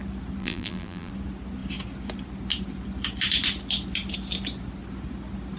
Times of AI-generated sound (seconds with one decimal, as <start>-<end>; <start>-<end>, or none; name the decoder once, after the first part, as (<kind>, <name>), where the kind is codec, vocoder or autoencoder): 0.4-1.1 (vocoder, BigVGAN v2)